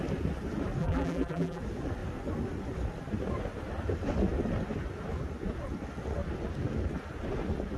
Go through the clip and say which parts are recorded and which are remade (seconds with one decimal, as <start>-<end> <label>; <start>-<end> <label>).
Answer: 0.0-0.8 recorded; 0.8-1.6 remade; 1.6-7.8 recorded